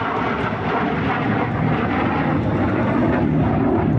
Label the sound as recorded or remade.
recorded